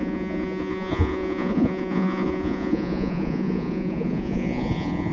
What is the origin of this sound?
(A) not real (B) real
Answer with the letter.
A